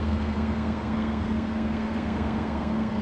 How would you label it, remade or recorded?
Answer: remade